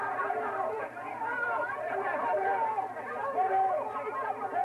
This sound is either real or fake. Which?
real